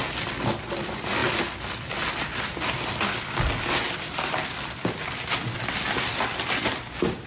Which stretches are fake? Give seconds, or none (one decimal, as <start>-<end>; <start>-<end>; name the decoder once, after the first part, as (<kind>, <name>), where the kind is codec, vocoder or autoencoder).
none